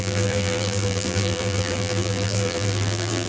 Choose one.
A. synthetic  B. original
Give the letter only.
A